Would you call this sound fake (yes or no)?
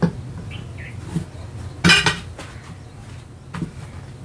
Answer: no